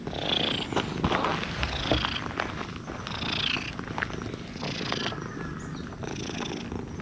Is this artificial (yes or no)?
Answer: no